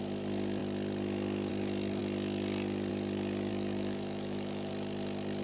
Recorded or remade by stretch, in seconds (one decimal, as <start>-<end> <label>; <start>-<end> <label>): 0.0-3.5 recorded; 3.5-4.7 remade; 4.7-5.4 recorded